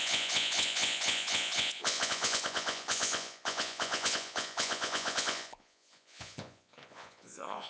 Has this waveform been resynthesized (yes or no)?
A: yes